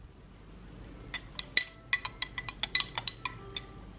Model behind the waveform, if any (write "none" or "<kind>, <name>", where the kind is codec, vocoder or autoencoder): none